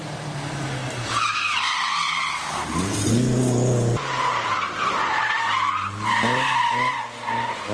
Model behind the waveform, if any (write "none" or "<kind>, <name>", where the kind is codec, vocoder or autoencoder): none